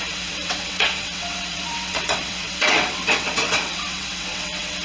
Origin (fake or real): fake